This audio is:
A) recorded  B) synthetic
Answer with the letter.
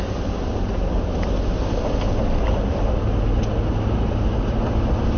A